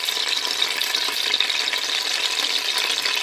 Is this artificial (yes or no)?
no